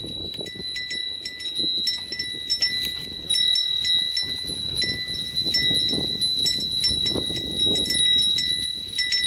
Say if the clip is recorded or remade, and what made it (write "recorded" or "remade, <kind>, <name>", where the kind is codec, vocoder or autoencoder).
recorded